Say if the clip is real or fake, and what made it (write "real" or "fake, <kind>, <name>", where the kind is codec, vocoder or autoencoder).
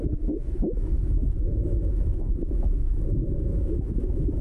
fake, autoencoder, DAC-VAE